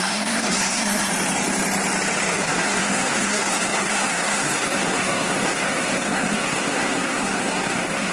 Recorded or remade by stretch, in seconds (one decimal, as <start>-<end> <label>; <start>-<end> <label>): 0.0-1.1 remade; 1.1-2.3 recorded; 2.3-8.1 remade